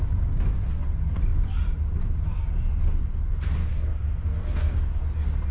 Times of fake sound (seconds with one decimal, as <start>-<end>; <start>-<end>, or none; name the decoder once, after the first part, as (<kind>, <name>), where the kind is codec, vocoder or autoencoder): 3.6-5.0 (codec, SNAC)